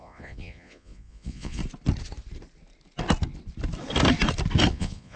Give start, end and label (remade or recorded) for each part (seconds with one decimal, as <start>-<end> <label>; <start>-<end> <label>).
0.0-1.6 remade; 1.6-4.7 recorded; 4.7-5.2 remade